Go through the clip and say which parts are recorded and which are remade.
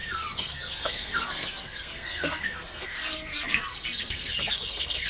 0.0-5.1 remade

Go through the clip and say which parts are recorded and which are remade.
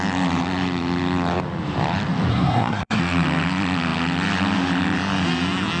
0.0-2.3 recorded; 2.3-3.0 remade; 3.0-5.8 recorded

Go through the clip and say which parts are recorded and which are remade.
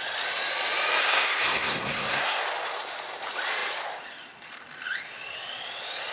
0.0-1.0 recorded; 1.0-2.4 remade; 2.4-6.1 recorded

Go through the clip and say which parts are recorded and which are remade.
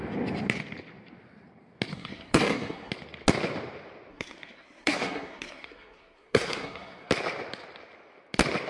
0.0-1.9 recorded; 1.9-2.9 remade; 2.9-4.1 recorded; 4.1-7.1 remade; 7.1-8.7 recorded